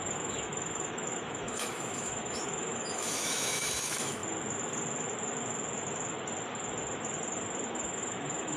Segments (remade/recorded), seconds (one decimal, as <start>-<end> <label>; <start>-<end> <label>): 0.0-4.2 remade; 4.2-7.7 recorded; 7.7-8.6 remade